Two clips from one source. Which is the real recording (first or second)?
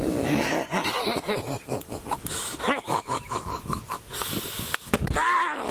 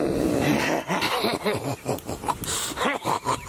second